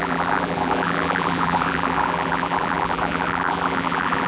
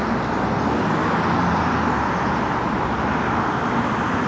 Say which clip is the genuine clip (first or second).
second